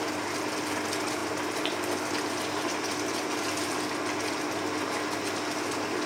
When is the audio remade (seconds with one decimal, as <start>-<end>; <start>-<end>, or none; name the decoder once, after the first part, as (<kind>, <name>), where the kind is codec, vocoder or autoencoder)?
none